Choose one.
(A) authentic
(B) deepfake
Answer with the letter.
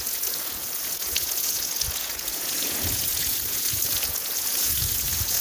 B